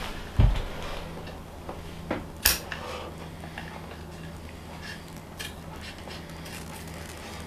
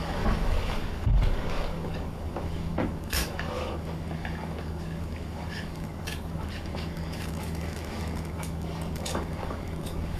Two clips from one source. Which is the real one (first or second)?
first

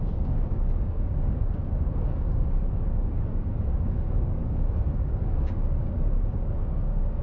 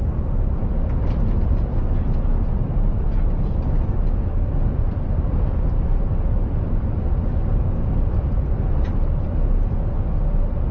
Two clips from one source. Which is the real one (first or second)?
second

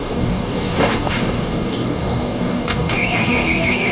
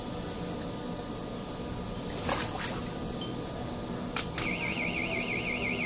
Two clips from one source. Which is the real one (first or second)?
second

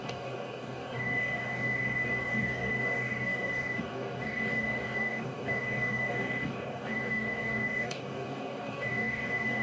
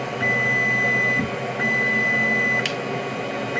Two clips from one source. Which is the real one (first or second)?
second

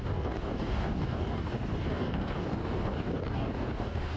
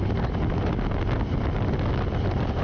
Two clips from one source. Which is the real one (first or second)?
second